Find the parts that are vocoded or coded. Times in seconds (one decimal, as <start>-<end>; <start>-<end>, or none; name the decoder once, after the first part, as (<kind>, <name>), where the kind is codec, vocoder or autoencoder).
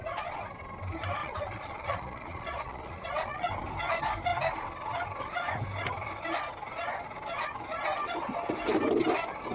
1.2-3.6 (vocoder, Vocos)